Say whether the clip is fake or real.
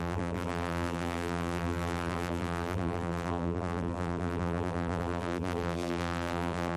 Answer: fake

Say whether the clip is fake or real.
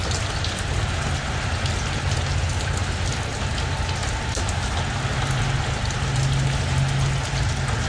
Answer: real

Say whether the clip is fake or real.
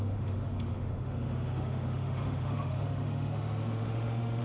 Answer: fake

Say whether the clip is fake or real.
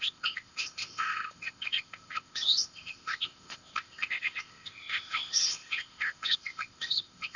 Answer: fake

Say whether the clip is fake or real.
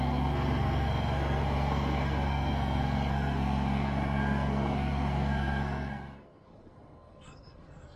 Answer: fake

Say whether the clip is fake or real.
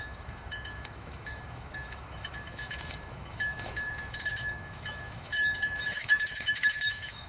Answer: fake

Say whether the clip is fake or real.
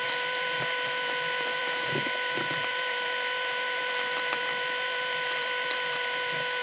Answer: fake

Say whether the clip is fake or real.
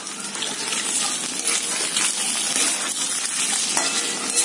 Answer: real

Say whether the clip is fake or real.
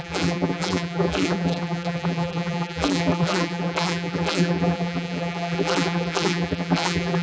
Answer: fake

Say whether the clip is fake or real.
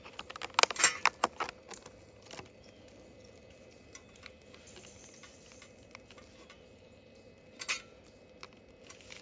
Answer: real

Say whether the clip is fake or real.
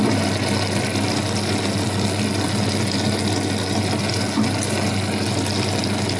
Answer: real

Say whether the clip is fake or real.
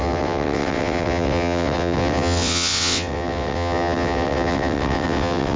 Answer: fake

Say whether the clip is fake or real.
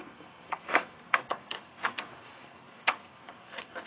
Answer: fake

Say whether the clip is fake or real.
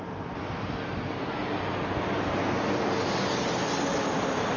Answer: real